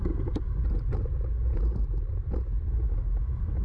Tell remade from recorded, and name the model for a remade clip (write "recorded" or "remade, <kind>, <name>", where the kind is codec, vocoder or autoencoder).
recorded